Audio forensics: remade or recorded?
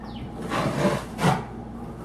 recorded